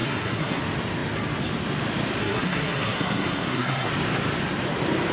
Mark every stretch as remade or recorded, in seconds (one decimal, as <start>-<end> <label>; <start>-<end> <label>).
0.0-0.6 remade; 0.6-2.2 recorded; 2.2-3.9 remade; 3.9-5.1 recorded